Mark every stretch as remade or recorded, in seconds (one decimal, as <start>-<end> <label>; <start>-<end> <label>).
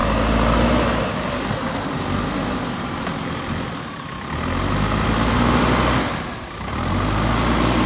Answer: 0.0-7.9 recorded